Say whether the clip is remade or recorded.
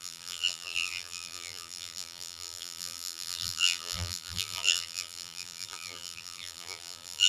remade